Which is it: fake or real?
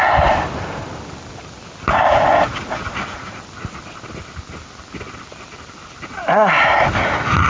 real